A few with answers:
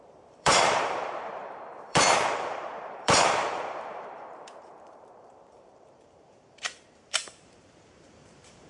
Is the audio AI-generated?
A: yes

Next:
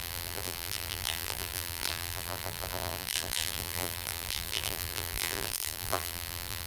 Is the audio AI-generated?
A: yes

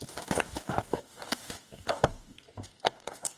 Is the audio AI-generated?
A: yes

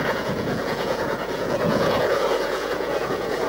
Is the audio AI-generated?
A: yes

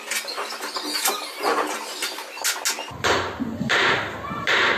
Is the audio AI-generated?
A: no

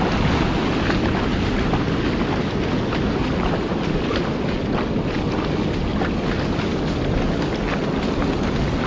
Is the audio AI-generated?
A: no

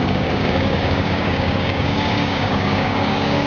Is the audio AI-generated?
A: yes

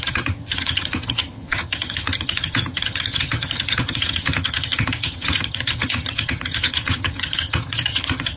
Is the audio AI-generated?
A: yes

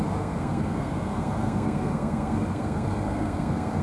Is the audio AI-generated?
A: yes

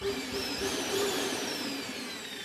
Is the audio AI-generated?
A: yes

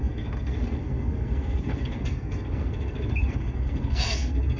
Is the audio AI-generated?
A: yes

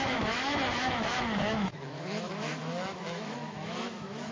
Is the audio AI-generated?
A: yes